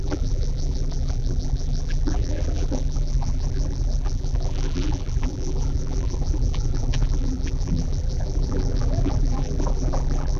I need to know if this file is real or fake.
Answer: fake